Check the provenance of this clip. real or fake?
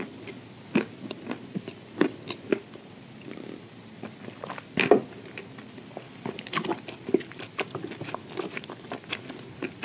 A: real